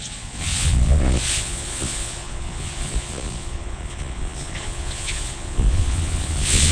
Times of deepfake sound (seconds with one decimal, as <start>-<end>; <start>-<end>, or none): 0.0-6.7